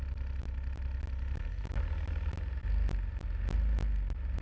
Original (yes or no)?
yes